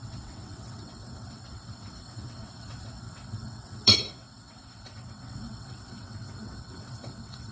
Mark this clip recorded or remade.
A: remade